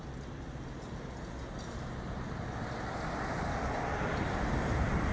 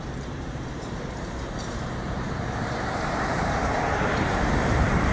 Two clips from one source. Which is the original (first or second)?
first